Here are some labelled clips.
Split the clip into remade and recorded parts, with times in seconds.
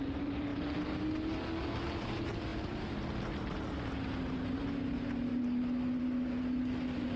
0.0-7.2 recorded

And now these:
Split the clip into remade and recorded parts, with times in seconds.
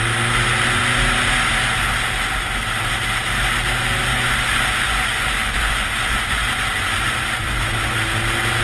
0.0-4.1 recorded; 4.1-8.0 remade; 8.0-8.6 recorded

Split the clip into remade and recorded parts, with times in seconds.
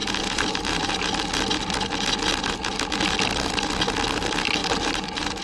0.0-1.2 remade; 1.2-4.6 recorded; 4.6-5.4 remade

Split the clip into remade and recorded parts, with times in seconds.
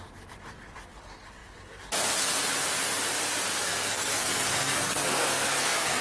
0.0-3.5 recorded; 3.5-6.0 remade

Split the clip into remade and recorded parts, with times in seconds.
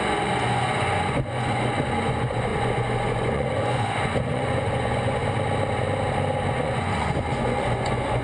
0.0-5.2 remade; 5.2-6.5 recorded; 6.5-8.2 remade